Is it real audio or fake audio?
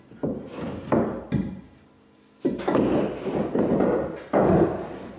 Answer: real